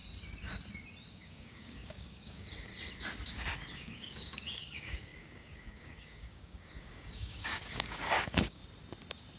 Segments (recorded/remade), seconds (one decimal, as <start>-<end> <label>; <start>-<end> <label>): 0.0-1.1 recorded; 1.1-2.7 remade; 2.7-3.7 recorded; 3.7-8.6 remade; 8.6-9.4 recorded